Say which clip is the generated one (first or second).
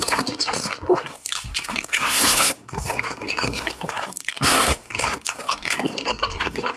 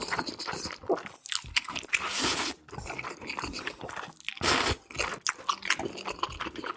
first